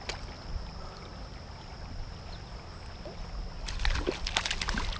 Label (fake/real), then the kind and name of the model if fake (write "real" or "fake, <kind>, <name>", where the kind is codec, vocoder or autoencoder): real